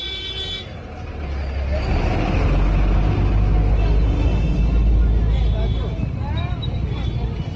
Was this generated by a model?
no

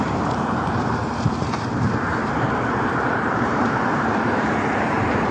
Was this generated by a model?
yes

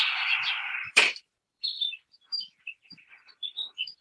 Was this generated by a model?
yes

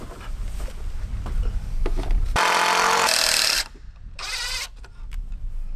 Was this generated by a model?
no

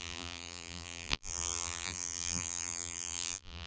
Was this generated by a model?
yes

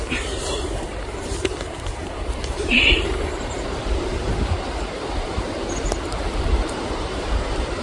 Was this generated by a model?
yes